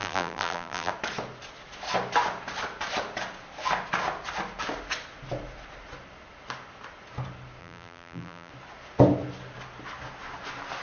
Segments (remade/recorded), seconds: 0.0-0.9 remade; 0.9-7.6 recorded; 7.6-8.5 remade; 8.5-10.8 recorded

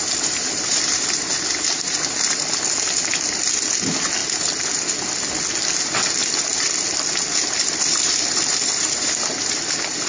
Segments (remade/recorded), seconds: 0.0-6.2 recorded; 6.2-9.5 remade; 9.5-10.1 recorded

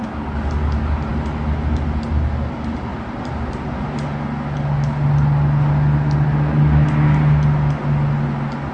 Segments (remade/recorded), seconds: 0.0-2.9 recorded; 2.9-3.5 remade; 3.5-8.7 recorded

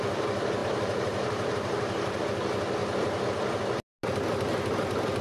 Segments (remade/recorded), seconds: 0.0-0.6 recorded; 0.6-2.2 remade; 2.2-2.8 recorded; 2.8-3.3 remade; 3.3-5.2 recorded

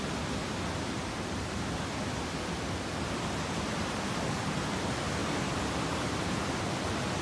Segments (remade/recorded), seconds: 0.0-5.2 recorded; 5.2-6.6 remade; 6.6-7.2 recorded

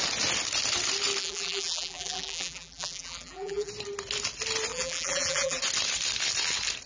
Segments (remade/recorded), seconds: 0.0-1.2 recorded; 1.2-3.7 remade; 3.7-4.7 recorded; 4.7-5.6 remade; 5.6-6.9 recorded

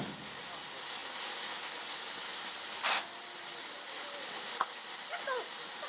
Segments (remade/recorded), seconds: 0.0-1.0 recorded; 1.0-1.5 remade; 1.5-2.3 recorded; 2.3-5.9 remade

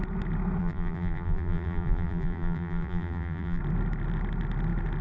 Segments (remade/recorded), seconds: 0.0-0.6 recorded; 0.6-3.6 remade; 3.6-5.0 recorded